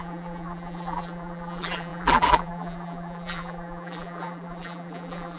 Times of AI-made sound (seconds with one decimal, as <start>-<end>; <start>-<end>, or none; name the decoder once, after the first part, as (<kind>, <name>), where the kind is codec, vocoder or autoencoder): 0.0-5.4 (vocoder, BigVGAN v2)